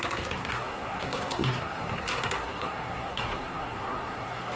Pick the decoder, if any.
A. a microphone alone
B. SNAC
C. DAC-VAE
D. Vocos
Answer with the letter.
B